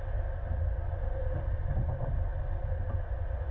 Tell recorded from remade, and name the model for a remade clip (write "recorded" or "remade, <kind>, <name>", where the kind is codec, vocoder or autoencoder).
recorded